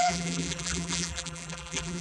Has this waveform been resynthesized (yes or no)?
yes